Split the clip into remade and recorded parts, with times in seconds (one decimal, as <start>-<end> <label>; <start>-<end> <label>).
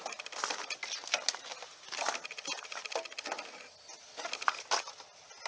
0.0-5.5 recorded